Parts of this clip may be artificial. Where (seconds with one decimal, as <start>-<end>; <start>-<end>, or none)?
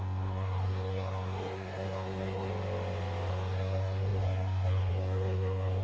0.0-2.5; 3.3-5.8